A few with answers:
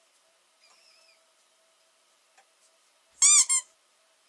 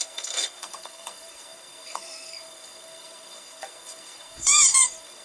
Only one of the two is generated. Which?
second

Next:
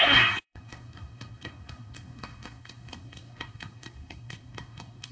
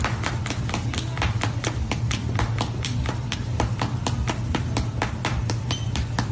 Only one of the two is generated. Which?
first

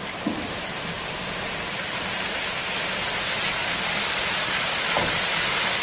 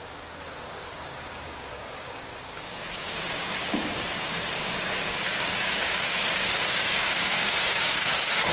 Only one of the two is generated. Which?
second